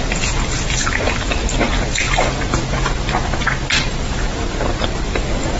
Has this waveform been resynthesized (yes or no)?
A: no